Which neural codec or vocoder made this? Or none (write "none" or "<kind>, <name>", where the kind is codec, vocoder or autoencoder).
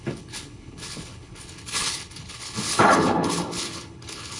codec, HILCodec